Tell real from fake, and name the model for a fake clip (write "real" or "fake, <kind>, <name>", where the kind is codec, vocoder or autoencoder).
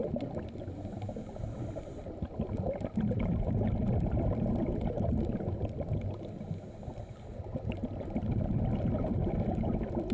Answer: real